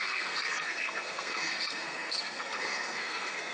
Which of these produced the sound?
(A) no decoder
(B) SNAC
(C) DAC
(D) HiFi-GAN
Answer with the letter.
B